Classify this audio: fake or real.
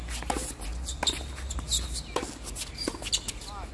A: real